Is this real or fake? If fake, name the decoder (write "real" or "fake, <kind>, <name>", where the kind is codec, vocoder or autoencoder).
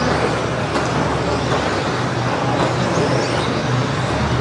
real